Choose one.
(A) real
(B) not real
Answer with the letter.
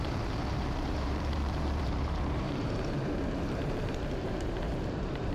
B